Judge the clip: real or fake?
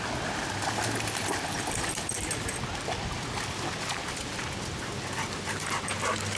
real